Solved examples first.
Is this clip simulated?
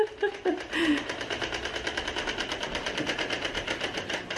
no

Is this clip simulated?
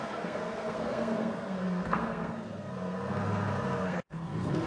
yes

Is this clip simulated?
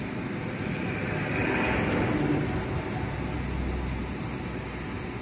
no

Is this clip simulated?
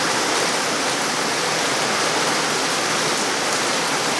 no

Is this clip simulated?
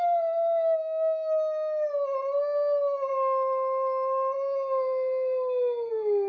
no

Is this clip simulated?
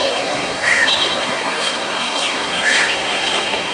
yes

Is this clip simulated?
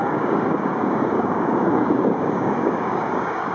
yes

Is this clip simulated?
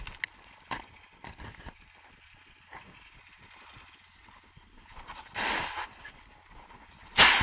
no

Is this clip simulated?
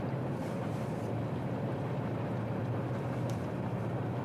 yes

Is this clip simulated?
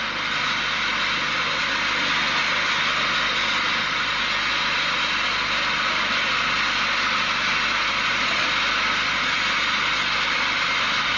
no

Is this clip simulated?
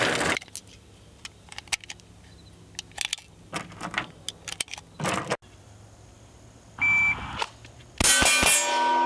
no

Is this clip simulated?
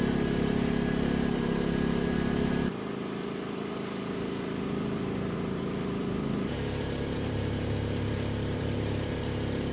yes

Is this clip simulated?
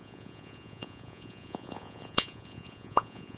yes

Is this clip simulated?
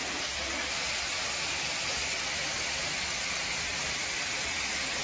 no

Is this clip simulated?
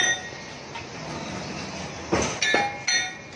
no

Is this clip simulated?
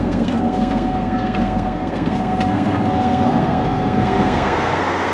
yes